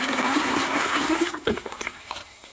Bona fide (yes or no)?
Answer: no